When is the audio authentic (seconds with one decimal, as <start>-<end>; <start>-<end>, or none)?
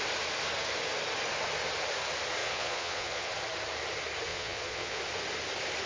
0.0-2.4; 3.3-4.3; 5.0-5.9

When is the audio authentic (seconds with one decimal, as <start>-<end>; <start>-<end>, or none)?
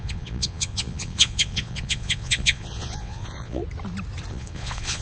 3.6-4.3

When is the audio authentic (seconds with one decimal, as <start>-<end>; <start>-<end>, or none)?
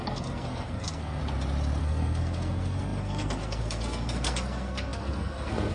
1.2-1.8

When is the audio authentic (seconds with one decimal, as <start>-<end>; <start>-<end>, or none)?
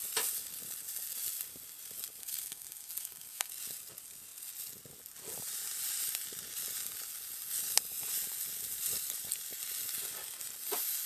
0.0-2.2; 3.5-11.1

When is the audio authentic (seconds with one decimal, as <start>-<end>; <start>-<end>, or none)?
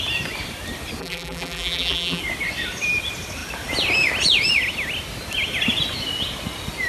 0.0-1.0; 2.2-6.9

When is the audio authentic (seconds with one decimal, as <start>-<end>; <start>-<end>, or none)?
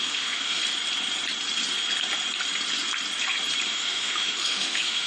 0.6-3.7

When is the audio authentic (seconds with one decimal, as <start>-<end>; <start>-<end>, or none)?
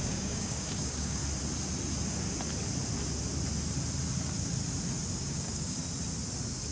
1.2-5.2; 5.8-6.7